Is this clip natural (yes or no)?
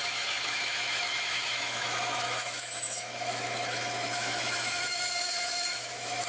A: no